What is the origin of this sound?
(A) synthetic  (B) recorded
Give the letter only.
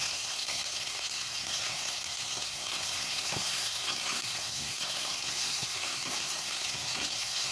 A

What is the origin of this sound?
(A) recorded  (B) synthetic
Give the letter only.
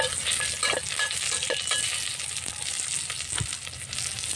A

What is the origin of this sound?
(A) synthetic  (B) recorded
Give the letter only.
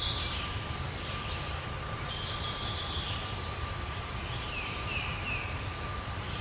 A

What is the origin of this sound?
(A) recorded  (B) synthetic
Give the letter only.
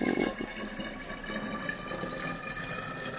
A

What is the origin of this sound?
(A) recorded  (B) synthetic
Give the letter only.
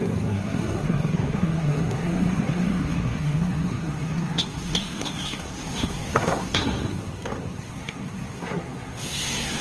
B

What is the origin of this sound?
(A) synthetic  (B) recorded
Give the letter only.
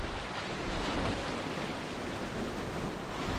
B